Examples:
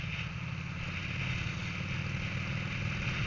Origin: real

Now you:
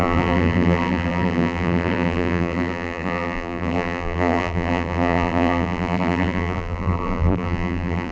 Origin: fake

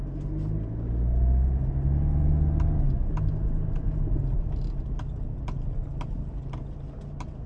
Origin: real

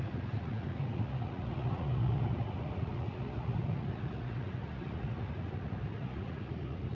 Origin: fake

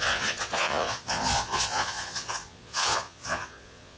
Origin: fake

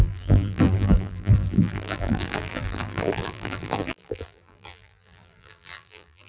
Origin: fake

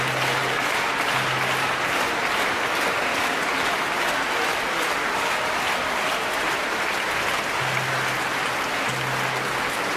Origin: real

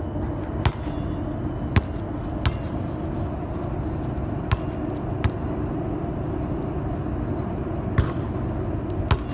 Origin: real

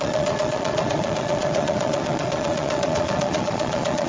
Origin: fake